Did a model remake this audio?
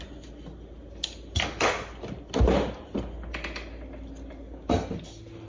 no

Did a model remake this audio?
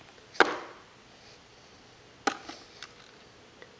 no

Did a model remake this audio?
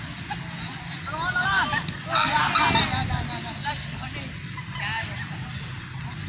no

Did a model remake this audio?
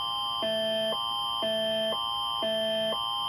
no